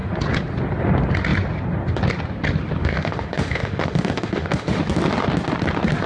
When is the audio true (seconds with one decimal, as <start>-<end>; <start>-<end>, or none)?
0.0-2.8; 4.8-6.1